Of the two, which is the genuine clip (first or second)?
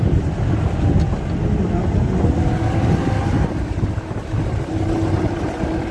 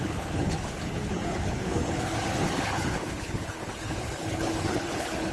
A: first